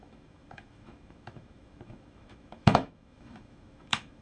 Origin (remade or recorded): remade